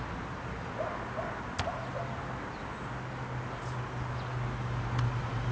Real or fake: real